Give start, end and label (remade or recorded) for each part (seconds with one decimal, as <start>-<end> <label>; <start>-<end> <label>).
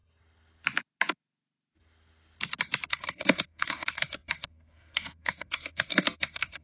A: 0.0-2.9 recorded; 2.9-6.6 remade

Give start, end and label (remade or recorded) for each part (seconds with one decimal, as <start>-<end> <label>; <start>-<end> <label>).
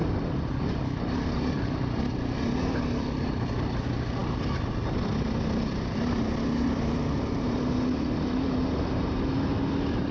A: 0.0-10.1 recorded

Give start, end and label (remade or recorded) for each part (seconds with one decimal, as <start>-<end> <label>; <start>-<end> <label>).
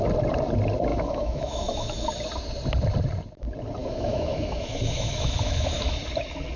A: 0.0-0.9 recorded; 0.9-2.1 remade; 2.1-3.8 recorded; 3.8-6.0 remade; 6.0-6.6 recorded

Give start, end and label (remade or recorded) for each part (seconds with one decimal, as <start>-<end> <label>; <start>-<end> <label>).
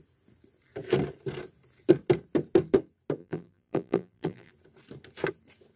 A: 0.0-3.2 recorded; 3.2-4.5 remade; 4.5-5.8 recorded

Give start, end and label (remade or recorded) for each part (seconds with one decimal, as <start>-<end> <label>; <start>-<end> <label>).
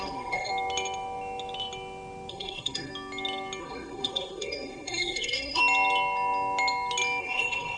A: 0.0-0.5 remade; 0.5-2.3 recorded; 2.3-2.9 remade; 2.9-3.6 recorded; 3.6-5.6 remade; 5.6-7.2 recorded; 7.2-7.8 remade